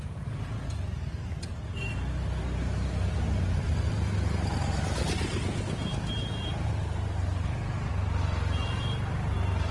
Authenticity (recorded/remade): recorded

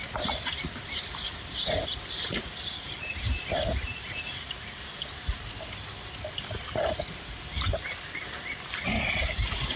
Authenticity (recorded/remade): recorded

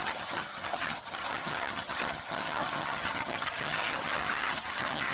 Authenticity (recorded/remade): remade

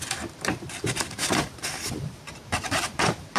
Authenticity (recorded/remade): remade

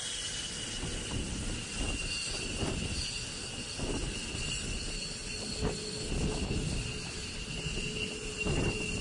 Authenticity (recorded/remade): recorded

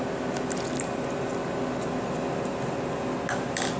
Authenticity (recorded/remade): recorded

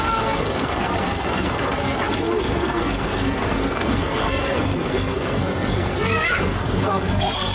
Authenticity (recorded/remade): remade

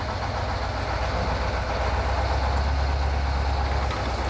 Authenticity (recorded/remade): recorded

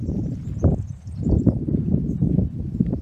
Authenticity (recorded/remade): remade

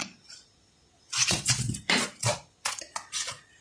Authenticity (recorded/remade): remade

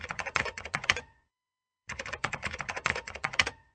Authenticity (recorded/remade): remade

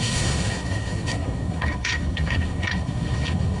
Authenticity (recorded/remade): remade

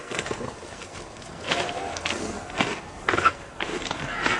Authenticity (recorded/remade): remade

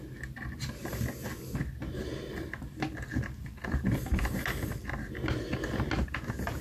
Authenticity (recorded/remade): recorded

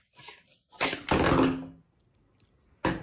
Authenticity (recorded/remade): recorded